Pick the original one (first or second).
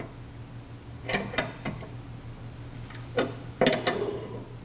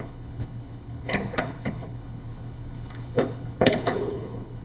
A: first